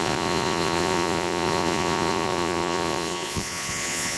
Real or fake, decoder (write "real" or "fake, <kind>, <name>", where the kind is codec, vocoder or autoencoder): fake, vocoder, Vocos